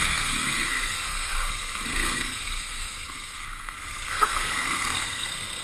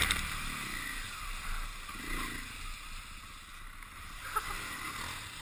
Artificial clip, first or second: first